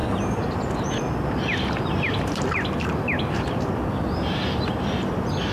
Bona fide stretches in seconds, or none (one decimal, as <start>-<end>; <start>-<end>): 0.0-5.5